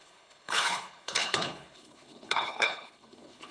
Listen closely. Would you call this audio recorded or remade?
remade